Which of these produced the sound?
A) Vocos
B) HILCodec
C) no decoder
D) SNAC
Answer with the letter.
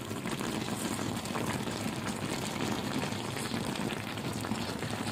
C